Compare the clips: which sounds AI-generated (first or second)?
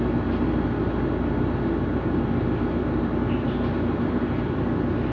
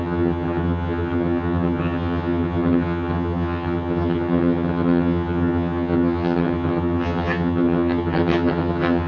second